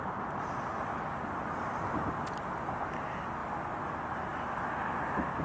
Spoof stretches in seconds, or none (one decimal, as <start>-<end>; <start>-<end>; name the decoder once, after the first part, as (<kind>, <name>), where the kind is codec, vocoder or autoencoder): none